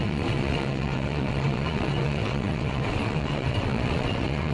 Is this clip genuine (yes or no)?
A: no